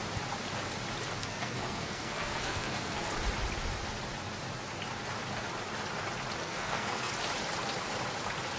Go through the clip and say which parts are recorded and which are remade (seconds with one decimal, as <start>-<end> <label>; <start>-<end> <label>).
0.0-1.2 recorded; 1.2-3.1 remade; 3.1-6.4 recorded; 6.4-7.1 remade; 7.1-8.6 recorded